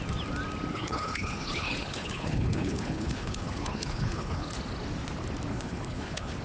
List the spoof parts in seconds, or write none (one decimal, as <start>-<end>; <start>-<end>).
0.7-4.5; 5.5-6.4